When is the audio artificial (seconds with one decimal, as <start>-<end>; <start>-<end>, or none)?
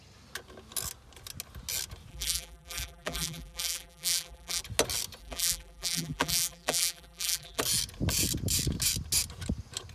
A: 2.1-4.6; 5.2-7.6